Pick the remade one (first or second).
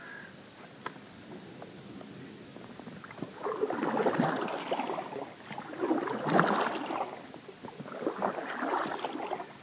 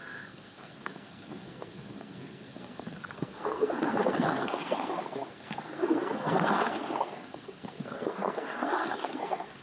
second